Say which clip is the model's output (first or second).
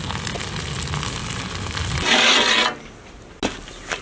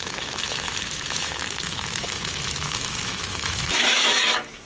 second